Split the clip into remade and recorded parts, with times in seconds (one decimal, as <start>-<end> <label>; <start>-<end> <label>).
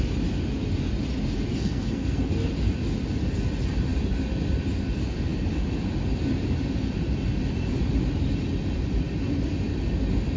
0.0-1.5 recorded; 1.5-2.3 remade; 2.3-10.4 recorded